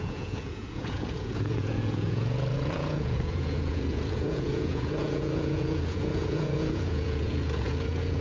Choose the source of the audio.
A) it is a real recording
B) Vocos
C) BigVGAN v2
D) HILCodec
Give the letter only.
B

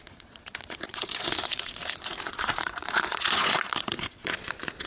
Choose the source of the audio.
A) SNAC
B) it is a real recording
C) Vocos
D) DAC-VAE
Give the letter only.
C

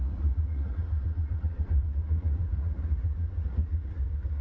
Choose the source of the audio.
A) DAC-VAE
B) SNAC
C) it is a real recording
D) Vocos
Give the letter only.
D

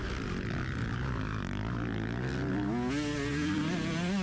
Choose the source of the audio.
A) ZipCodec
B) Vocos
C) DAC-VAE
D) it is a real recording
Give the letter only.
D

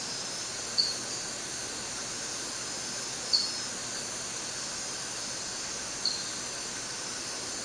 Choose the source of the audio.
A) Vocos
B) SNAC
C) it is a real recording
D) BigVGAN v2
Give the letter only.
C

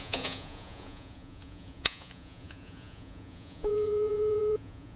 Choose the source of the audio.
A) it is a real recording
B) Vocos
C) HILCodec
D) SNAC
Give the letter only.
B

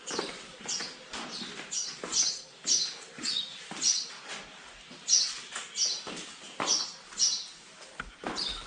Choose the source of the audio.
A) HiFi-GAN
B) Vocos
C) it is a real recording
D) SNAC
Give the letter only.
C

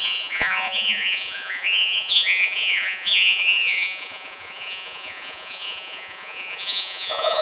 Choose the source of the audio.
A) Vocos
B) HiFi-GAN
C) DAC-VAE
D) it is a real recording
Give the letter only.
A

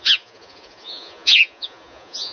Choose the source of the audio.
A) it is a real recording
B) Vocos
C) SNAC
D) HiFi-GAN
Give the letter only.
B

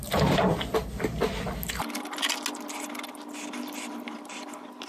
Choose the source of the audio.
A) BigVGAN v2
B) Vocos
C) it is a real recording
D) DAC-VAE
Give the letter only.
C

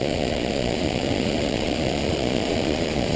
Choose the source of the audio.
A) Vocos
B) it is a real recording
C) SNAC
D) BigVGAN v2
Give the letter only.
A